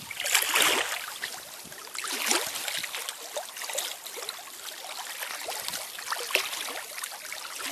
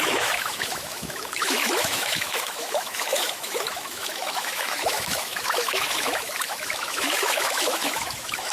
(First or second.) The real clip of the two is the first